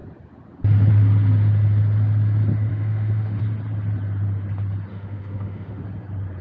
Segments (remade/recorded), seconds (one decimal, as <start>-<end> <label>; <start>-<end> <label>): 0.0-2.7 recorded; 2.7-3.4 remade; 3.4-4.9 recorded; 4.9-5.8 remade; 5.8-6.4 recorded